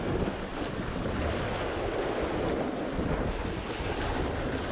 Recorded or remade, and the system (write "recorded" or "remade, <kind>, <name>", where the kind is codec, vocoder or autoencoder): recorded